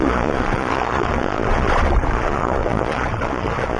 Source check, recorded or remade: remade